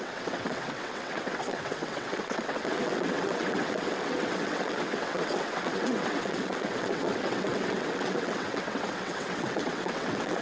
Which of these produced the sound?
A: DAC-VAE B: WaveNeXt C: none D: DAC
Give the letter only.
B